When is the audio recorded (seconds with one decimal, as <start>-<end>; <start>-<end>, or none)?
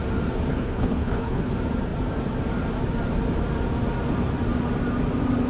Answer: 0.0-0.5; 1.5-5.5